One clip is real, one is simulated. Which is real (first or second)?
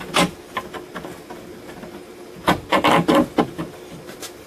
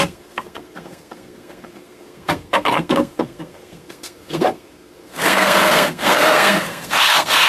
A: first